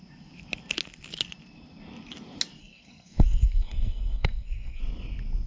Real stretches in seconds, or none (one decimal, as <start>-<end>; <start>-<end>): 0.0-2.6; 4.8-5.5